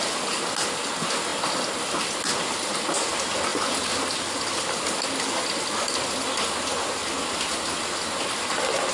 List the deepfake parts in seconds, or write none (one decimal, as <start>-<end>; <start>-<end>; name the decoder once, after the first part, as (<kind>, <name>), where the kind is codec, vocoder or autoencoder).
none